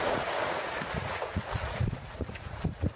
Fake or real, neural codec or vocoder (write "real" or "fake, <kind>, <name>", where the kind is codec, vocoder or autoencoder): fake, vocoder, Vocos